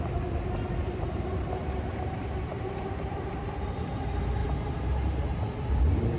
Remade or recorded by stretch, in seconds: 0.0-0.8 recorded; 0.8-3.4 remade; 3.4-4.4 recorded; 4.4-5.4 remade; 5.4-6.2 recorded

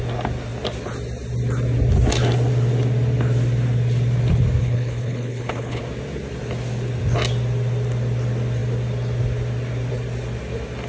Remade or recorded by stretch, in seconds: 0.0-4.6 recorded; 4.6-5.8 remade; 5.8-10.9 recorded

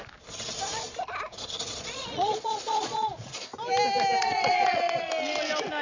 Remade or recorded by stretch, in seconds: 0.0-1.7 recorded; 1.7-3.5 remade; 3.5-4.2 recorded; 4.2-5.1 remade; 5.1-5.8 recorded